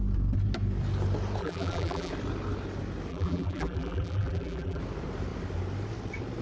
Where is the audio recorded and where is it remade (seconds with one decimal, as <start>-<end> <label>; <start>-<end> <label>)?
0.0-1.4 recorded; 1.4-2.1 remade; 2.1-3.1 recorded; 3.1-4.8 remade; 4.8-6.4 recorded